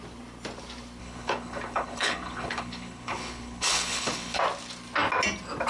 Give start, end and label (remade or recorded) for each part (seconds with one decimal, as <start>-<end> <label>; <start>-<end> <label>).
0.0-1.0 recorded; 1.0-4.4 remade; 4.4-5.7 recorded